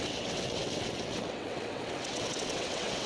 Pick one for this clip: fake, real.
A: fake